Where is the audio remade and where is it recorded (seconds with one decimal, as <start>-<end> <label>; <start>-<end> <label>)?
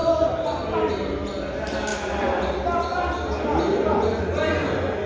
0.0-5.1 recorded